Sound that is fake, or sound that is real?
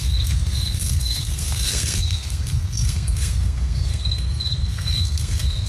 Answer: fake